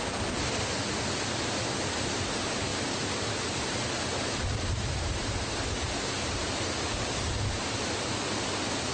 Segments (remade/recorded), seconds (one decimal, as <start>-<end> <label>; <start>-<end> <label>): 0.0-2.7 recorded; 2.7-7.9 remade; 7.9-8.9 recorded